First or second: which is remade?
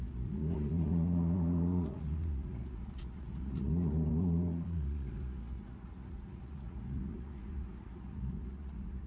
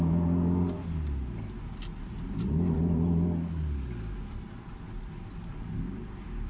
first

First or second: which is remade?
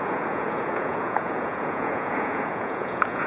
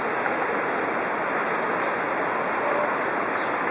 first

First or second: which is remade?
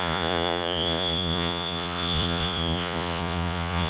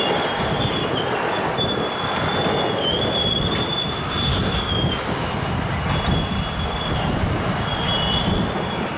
first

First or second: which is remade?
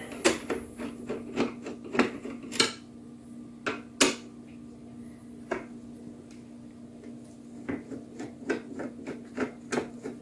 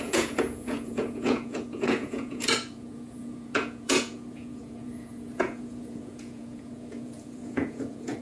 second